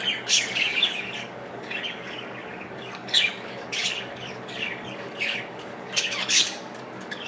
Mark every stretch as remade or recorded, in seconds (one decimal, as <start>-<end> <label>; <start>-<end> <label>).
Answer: 0.0-7.3 remade